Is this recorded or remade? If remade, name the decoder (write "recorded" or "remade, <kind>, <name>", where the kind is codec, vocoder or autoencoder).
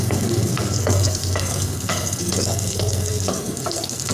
remade, codec, SNAC